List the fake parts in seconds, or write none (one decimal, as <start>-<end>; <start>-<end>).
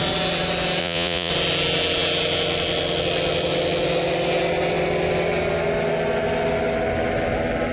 0.8-1.3